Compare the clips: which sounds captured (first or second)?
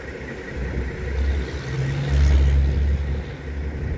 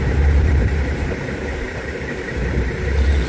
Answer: first